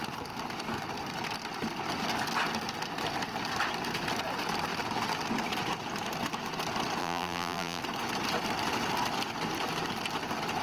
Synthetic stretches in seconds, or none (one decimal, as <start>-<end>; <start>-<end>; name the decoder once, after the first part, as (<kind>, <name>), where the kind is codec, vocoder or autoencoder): 7.0-7.8 (vocoder, BigVGAN v2)